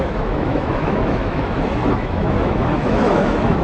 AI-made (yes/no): yes